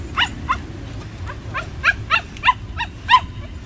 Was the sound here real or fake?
real